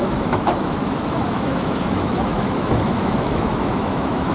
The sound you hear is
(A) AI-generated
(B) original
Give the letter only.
A